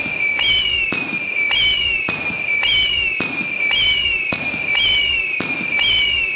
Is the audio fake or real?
real